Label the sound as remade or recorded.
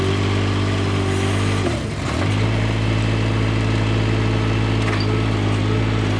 recorded